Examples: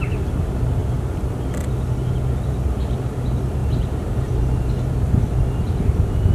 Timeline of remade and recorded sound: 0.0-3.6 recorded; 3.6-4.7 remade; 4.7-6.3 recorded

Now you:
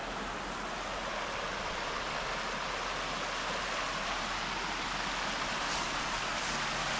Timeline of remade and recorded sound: 0.0-7.0 recorded

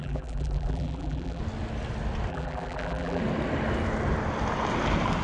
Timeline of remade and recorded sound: 0.0-1.4 remade; 1.4-2.3 recorded; 2.3-3.2 remade; 3.2-5.2 recorded

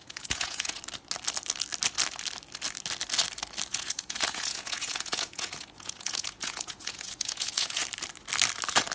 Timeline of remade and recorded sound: 0.0-0.8 remade; 0.8-3.7 recorded; 3.7-7.8 remade; 7.8-8.9 recorded

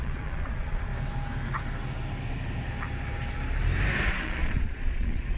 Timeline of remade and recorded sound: 0.0-0.9 remade; 0.9-4.1 recorded; 4.1-5.4 remade